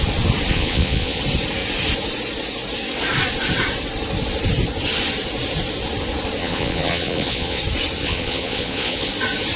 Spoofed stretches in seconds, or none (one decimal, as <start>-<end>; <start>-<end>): 0.5-1.2; 6.4-7.6; 8.0-9.1